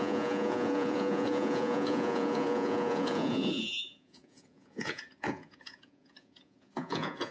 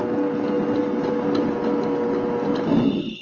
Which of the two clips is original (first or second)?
second